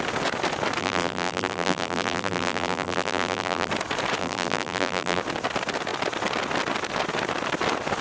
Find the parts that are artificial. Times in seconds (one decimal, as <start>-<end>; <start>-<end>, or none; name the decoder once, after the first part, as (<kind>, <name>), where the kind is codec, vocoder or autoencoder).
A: 0.8-3.7 (vocoder, BigVGAN v2); 4.2-5.2